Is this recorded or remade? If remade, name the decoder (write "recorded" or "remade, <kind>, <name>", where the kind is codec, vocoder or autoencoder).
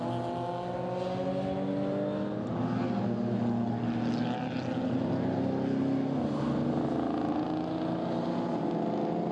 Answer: recorded